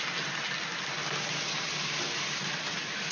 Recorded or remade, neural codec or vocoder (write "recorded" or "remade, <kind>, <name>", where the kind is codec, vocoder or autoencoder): recorded